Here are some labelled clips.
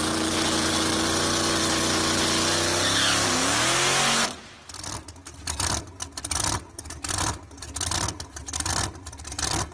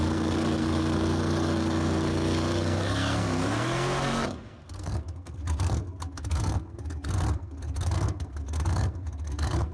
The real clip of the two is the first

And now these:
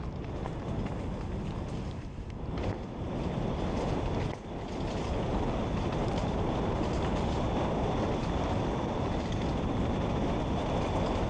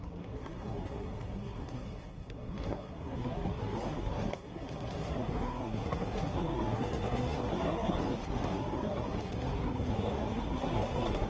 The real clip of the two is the first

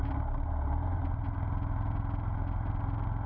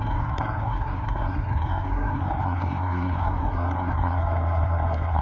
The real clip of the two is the first